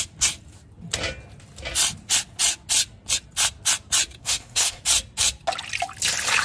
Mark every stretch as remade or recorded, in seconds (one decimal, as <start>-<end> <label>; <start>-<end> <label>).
0.0-4.2 recorded; 4.2-4.8 remade; 4.8-6.4 recorded